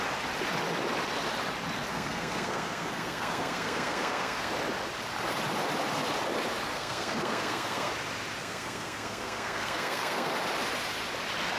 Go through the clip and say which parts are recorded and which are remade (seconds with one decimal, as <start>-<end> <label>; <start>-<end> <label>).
0.0-1.9 recorded; 1.9-4.5 remade; 4.5-6.7 recorded; 6.7-7.9 remade; 7.9-8.4 recorded; 8.4-10.3 remade; 10.3-11.6 recorded